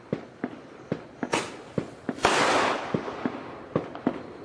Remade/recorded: recorded